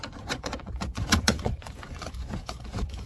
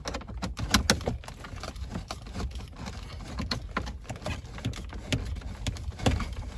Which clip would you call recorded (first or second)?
second